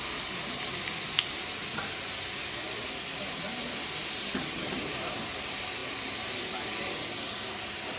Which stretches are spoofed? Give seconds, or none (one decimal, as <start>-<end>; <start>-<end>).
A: 4.2-4.8